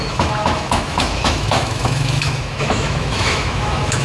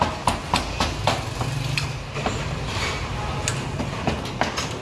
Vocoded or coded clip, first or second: first